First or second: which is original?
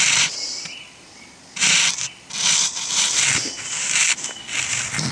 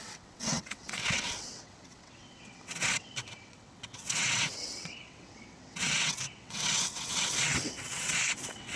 first